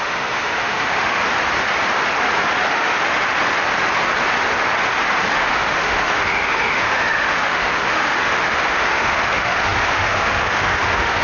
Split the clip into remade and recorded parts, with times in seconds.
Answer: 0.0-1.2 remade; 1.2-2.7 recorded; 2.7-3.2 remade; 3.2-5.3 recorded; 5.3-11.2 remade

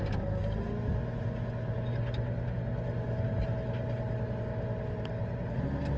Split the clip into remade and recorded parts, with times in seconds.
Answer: 0.0-6.0 recorded

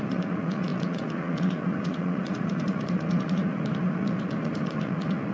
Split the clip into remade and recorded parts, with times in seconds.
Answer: 0.0-5.3 remade

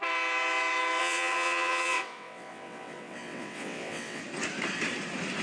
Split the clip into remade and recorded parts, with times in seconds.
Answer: 0.0-1.0 recorded; 1.0-4.2 remade; 4.2-5.4 recorded

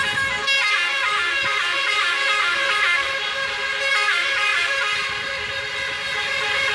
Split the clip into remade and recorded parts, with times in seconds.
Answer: 0.0-1.4 recorded; 1.4-2.3 remade; 2.3-4.5 recorded; 4.5-5.6 remade; 5.6-6.7 recorded